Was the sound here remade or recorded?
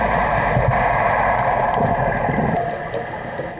recorded